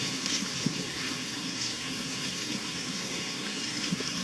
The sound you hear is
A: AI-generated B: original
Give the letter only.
A